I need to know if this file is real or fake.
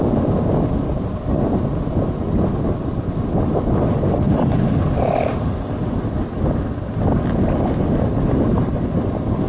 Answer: real